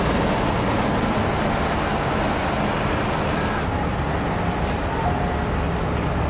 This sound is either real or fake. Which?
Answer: real